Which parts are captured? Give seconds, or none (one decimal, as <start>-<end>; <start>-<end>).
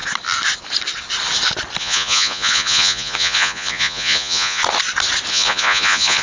0.0-1.8; 4.6-5.3